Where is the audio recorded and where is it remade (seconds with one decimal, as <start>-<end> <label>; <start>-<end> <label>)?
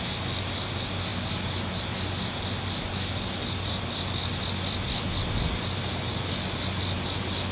0.0-7.5 recorded